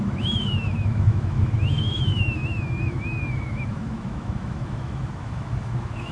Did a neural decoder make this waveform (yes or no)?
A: yes